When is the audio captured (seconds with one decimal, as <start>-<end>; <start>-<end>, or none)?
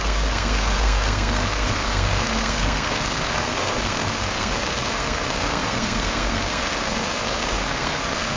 none